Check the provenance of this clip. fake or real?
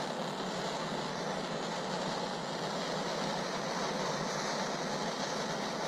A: real